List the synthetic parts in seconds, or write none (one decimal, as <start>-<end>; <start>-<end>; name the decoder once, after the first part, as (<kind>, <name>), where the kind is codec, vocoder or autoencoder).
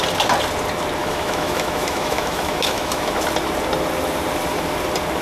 1.0-3.2 (autoencoder, DAC-VAE)